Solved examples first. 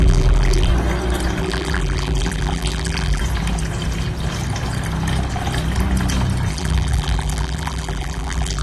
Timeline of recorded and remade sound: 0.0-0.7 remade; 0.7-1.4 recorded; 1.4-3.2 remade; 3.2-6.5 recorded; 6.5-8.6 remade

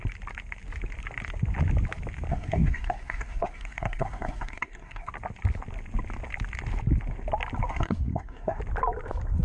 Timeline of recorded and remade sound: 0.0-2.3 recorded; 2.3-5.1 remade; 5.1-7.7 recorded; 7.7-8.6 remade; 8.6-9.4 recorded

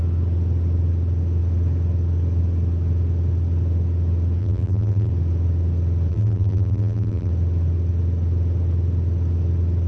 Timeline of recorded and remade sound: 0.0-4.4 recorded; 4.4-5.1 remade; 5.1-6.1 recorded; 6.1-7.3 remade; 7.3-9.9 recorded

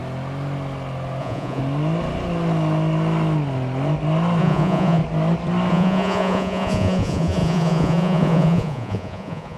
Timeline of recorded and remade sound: 0.0-1.2 recorded; 1.2-1.6 remade; 1.6-4.4 recorded; 4.4-5.0 remade; 5.0-5.7 recorded; 5.7-9.6 remade

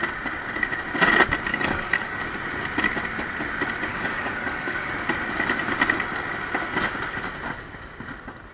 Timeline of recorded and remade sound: 0.0-1.5 recorded; 1.5-2.2 remade; 2.2-3.9 recorded; 3.9-4.9 remade; 4.9-8.5 recorded

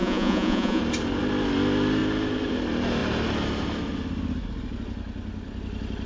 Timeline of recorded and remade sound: 0.0-0.8 remade; 0.8-6.1 recorded

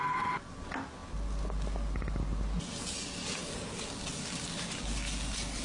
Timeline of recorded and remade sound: 0.0-5.6 recorded

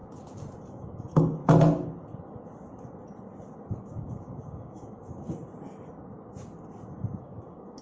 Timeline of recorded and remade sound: 0.0-0.7 recorded; 0.7-1.4 remade; 1.4-3.7 recorded; 3.7-5.5 remade; 5.5-7.2 recorded; 7.2-7.8 remade